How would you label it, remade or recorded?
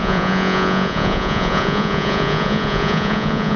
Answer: remade